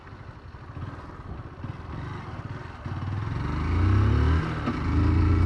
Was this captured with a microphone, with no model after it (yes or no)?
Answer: yes